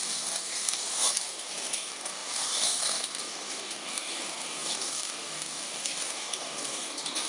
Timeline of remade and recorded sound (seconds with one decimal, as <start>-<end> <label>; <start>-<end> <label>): 0.0-7.3 remade